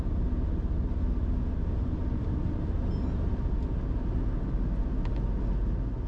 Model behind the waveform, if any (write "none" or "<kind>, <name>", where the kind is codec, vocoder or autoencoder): none